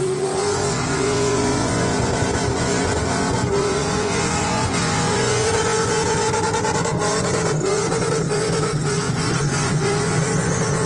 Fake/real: fake